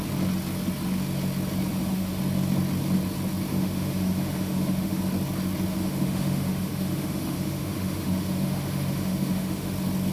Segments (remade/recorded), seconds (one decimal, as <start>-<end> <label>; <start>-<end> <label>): 0.0-1.7 recorded; 1.7-2.2 remade; 2.2-3.5 recorded; 3.5-5.0 remade; 5.0-5.7 recorded; 5.7-9.7 remade; 9.7-10.1 recorded